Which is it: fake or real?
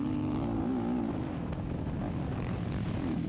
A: real